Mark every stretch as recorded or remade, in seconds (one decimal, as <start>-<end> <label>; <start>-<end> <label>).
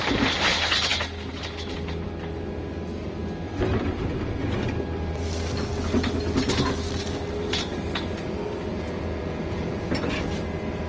0.0-8.7 recorded; 8.7-9.9 remade; 9.9-10.9 recorded